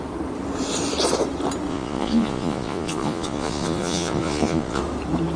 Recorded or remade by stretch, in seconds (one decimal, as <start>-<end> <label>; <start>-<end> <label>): 0.0-1.7 recorded; 1.7-4.8 remade; 4.8-5.4 recorded